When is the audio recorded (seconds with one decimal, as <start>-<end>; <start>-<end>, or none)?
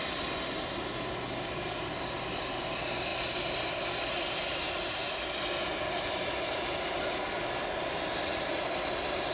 0.0-9.3